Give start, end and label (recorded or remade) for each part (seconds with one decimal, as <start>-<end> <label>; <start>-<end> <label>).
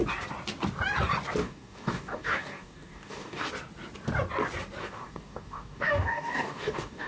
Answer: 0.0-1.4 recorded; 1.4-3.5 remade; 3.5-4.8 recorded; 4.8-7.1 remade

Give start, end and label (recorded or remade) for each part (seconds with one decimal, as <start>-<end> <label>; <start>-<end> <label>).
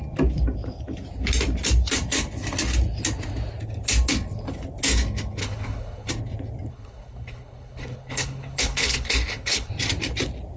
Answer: 0.0-5.4 recorded; 5.4-6.1 remade; 6.1-6.7 recorded; 6.7-9.7 remade; 9.7-10.6 recorded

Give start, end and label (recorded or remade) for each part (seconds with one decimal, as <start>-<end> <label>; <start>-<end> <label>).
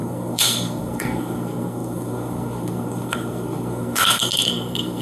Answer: 0.0-5.0 remade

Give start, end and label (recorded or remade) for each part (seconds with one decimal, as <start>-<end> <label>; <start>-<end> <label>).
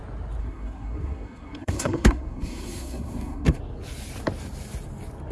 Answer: 0.0-0.4 recorded; 0.4-3.6 remade; 3.6-5.3 recorded